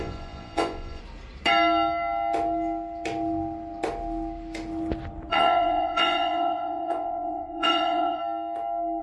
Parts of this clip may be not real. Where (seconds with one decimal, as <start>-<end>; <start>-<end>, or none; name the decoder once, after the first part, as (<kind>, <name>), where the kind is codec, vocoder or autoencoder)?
0.0-1.0 (vocoder, Vocos); 5.3-8.2

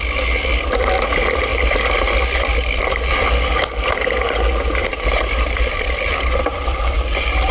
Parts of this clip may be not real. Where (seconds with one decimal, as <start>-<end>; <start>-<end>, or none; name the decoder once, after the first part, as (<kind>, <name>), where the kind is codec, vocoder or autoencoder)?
4.8-7.5 (vocoder, BigVGAN v2)

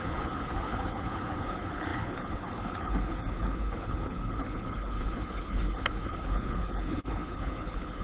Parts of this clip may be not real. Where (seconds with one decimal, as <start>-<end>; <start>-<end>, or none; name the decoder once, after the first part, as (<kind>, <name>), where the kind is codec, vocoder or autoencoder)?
0.0-8.0 (codec, HILCodec)

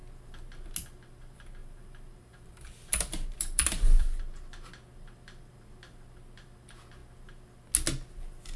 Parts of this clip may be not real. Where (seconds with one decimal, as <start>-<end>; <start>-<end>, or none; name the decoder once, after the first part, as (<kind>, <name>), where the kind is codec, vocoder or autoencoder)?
1.6-4.2 (vocoder, BigVGAN v2)

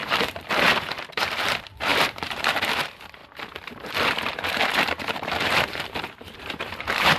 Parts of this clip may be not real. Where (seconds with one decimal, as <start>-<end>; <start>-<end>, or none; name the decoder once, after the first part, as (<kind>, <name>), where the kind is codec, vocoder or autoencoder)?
0.0-3.2 (vocoder, BigVGAN v2); 3.9-7.2

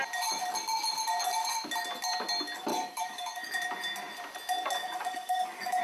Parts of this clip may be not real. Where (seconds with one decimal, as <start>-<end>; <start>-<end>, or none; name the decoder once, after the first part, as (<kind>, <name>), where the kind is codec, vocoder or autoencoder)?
2.7-3.5 (codec, DAC); 4.8-5.8